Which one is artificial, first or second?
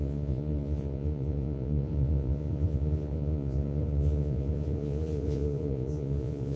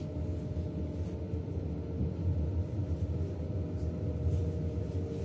first